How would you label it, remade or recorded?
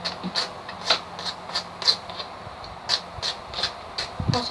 recorded